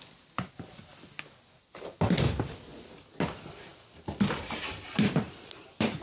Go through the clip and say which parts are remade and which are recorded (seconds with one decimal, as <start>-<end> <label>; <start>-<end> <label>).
0.0-3.7 recorded; 3.7-5.4 remade; 5.4-6.0 recorded